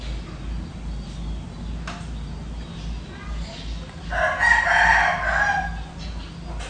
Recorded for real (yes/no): yes